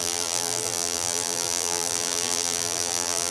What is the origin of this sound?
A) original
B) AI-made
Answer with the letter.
B